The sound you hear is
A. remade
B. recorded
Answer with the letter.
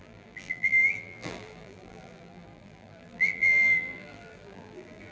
A